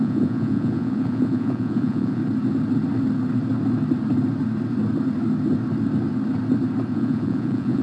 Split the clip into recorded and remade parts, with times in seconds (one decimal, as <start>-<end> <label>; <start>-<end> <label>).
0.0-2.2 remade; 2.2-6.9 recorded; 6.9-7.8 remade